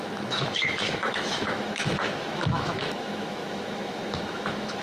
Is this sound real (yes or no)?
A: no